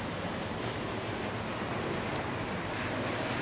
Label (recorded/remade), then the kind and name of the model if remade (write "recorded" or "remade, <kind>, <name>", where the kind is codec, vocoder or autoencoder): remade, vocoder, BigVGAN v2